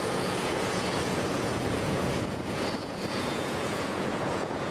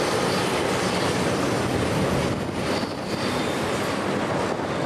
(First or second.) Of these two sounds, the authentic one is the second